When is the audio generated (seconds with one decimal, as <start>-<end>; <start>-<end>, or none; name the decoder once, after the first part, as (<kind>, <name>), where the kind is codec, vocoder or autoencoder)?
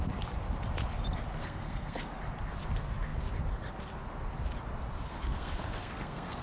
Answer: 1.4-2.2 (codec, SNAC); 5.1-6.4